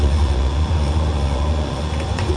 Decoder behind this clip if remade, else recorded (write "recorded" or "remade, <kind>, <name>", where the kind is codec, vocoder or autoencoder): remade, vocoder, Vocos